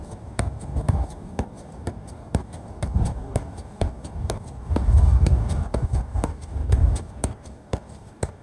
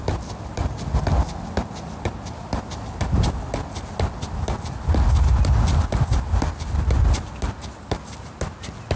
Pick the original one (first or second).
second